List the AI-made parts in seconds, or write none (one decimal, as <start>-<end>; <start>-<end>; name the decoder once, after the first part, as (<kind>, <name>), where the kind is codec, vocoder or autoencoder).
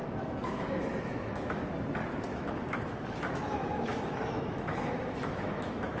0.0-1.6 (autoencoder, DAC-VAE); 2.3-6.0